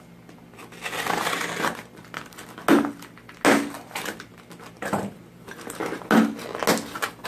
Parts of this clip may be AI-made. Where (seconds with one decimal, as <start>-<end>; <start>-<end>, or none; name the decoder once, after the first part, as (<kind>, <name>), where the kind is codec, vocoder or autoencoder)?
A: none